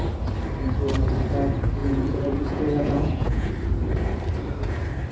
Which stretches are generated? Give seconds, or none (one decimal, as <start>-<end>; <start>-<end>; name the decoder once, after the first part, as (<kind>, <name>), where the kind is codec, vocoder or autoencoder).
1.8-3.5 (vocoder, Vocos)